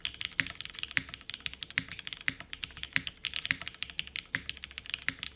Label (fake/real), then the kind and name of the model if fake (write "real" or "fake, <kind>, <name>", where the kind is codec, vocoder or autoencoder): real